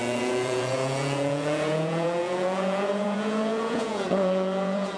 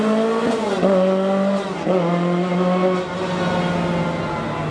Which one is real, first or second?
second